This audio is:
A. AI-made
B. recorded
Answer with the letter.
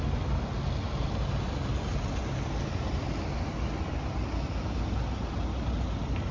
B